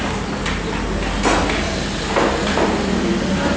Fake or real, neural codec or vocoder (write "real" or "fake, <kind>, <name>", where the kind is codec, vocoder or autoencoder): real